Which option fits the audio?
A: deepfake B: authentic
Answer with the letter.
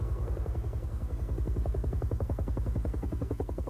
A